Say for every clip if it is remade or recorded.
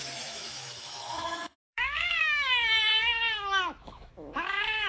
remade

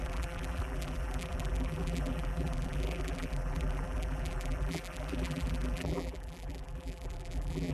remade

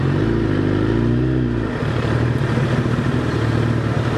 recorded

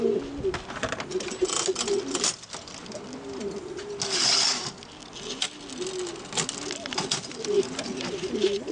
recorded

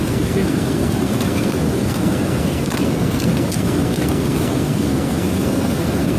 remade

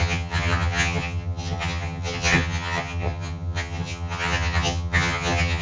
remade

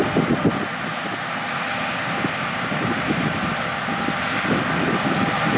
recorded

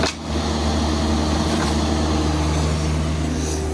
recorded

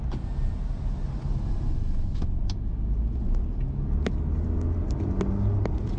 recorded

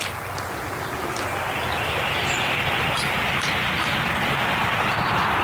recorded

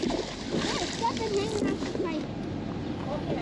recorded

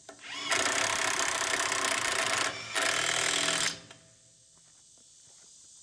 recorded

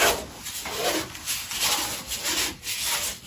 recorded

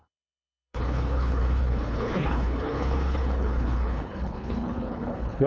remade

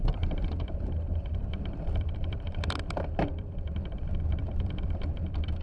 remade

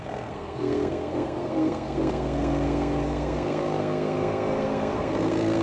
remade